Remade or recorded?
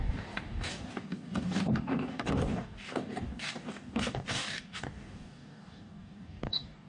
remade